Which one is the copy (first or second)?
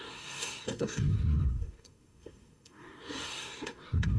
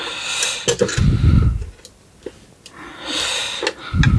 first